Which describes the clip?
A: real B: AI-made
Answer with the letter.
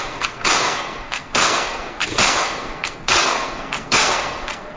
B